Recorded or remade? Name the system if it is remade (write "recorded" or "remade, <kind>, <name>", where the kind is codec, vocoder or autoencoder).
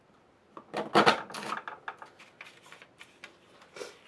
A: recorded